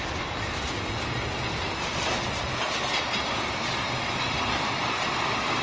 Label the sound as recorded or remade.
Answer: recorded